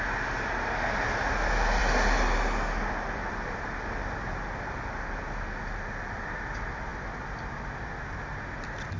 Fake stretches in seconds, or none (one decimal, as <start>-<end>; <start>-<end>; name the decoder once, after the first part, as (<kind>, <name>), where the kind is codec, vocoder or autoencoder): none